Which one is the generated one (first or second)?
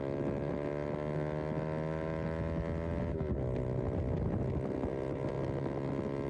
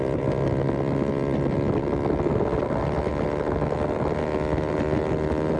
second